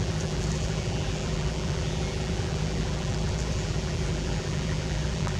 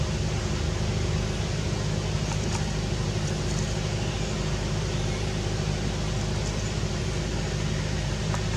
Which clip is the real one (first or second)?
second